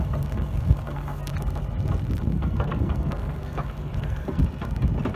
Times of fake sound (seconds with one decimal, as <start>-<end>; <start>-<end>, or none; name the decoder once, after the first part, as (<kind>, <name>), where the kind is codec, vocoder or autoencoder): 0.0-1.3 (codec, SNAC); 2.2-4.4